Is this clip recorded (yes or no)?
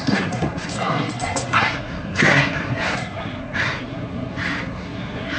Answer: no